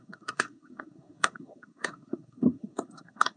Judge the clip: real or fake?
fake